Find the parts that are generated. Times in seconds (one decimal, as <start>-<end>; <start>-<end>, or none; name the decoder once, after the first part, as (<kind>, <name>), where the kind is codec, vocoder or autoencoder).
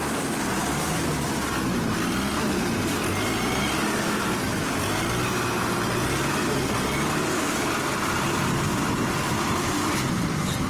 none